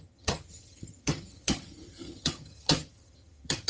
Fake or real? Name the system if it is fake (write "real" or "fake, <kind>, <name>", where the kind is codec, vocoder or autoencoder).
fake, vocoder, HiFi-GAN